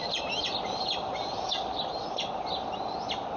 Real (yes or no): yes